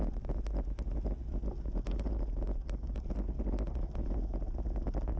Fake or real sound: real